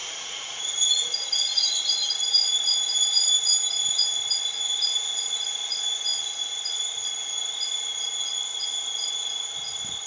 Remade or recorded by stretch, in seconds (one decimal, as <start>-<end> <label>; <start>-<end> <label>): 0.0-0.7 remade; 0.7-10.1 recorded